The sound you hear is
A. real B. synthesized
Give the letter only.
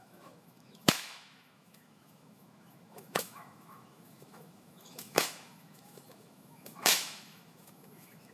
B